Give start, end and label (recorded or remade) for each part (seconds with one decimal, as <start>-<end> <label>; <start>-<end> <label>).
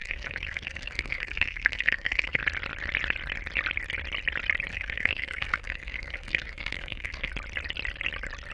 0.0-2.4 remade; 2.4-4.7 recorded; 4.7-7.3 remade; 7.3-8.5 recorded